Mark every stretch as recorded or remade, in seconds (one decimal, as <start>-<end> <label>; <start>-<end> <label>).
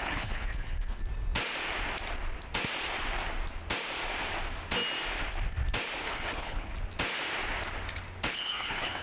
0.0-1.0 remade; 1.0-6.0 recorded; 6.0-6.7 remade; 6.7-8.3 recorded; 8.3-9.0 remade